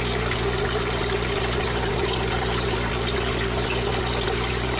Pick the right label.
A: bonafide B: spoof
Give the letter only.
A